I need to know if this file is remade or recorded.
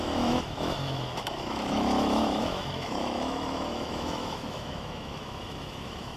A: remade